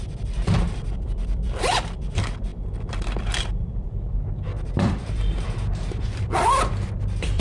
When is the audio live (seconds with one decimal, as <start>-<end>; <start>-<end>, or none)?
none

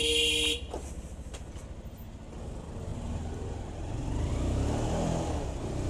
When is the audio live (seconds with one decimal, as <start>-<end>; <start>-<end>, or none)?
0.0-2.9; 4.3-5.9

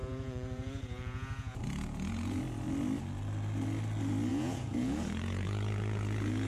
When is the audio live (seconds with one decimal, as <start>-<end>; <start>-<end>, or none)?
2.4-4.3

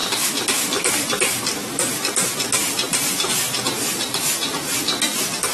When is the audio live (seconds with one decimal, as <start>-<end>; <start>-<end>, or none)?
0.0-5.5